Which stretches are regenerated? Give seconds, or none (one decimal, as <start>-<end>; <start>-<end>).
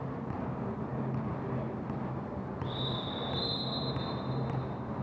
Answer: none